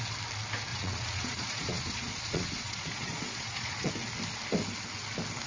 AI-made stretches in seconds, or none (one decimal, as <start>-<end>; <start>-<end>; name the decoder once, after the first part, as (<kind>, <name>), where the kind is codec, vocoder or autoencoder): 0.7-3.9 (vocoder, Vocos)